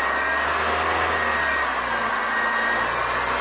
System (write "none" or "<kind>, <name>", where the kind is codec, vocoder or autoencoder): none